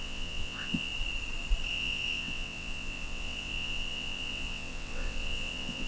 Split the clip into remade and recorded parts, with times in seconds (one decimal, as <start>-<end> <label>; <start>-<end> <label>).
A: 0.0-0.9 remade; 0.9-1.7 recorded; 1.7-5.9 remade